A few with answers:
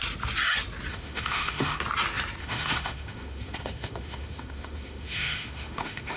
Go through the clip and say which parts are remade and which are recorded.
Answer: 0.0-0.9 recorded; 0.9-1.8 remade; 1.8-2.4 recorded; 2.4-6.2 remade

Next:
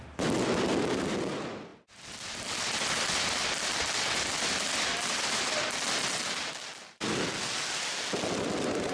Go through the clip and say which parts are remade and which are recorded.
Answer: 0.0-8.9 recorded

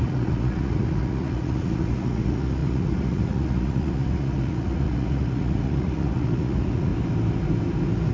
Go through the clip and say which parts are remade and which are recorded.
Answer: 0.0-6.9 remade; 6.9-8.1 recorded

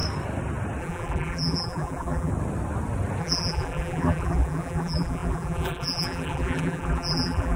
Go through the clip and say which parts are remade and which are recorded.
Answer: 0.0-0.8 recorded; 0.8-2.3 remade; 2.3-3.2 recorded; 3.2-7.6 remade